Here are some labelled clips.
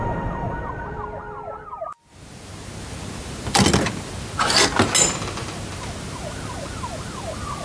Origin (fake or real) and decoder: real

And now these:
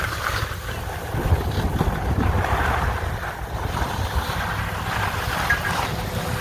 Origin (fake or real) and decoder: real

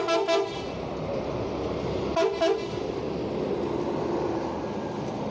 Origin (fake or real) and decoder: real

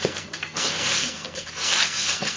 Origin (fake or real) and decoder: fake, codec, SNAC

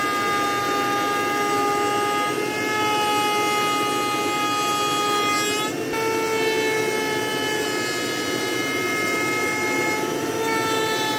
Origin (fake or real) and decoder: real